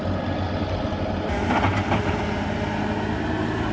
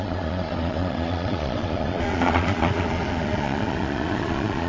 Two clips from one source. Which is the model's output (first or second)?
second